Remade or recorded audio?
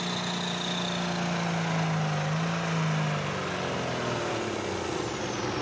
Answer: recorded